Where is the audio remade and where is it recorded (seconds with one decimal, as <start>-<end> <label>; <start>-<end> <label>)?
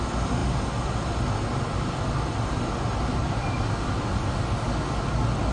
0.0-5.5 recorded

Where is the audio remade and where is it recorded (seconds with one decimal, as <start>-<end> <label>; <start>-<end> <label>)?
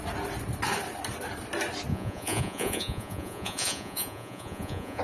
0.0-1.9 recorded; 1.9-5.0 remade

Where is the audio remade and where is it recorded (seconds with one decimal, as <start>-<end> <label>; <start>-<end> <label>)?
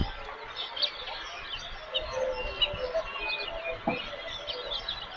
0.0-5.2 recorded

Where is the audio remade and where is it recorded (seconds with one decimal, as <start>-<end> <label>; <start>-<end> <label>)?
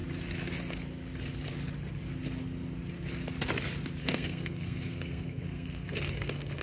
0.0-4.0 recorded; 4.0-6.6 remade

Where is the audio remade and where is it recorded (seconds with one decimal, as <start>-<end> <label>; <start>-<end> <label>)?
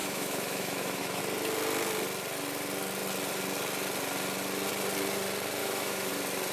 0.0-1.2 remade; 1.2-5.6 recorded; 5.6-6.1 remade; 6.1-6.5 recorded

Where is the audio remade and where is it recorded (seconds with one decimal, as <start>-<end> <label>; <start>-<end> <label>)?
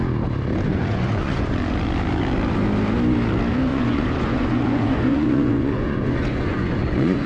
0.0-0.7 recorded; 0.7-1.5 remade; 1.5-3.7 recorded; 3.7-7.3 remade